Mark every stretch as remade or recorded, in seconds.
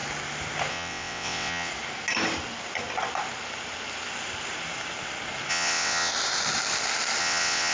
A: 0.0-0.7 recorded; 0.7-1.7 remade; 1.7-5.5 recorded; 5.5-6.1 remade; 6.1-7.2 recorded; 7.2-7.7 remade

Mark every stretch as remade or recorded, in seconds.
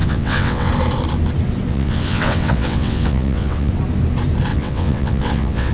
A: 0.0-0.7 remade; 0.7-1.7 recorded; 1.7-3.7 remade; 3.7-4.5 recorded; 4.5-5.7 remade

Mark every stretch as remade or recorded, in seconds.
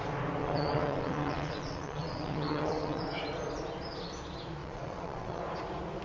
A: 0.0-0.4 recorded; 0.4-3.0 remade; 3.0-4.6 recorded; 4.6-5.4 remade; 5.4-6.0 recorded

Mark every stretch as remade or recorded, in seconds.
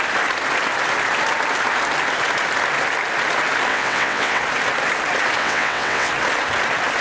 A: 0.0-3.7 recorded; 3.7-4.4 remade; 4.4-5.4 recorded; 5.4-6.1 remade; 6.1-7.0 recorded